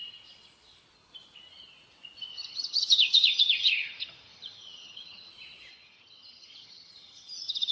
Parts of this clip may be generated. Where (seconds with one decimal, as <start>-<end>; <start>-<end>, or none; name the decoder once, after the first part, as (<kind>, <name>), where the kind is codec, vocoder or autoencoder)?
2.3-5.3 (vocoder, HiFi-GAN); 5.7-7.7